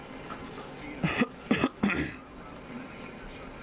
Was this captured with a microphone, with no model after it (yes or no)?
yes